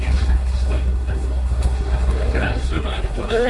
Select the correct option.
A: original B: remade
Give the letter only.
B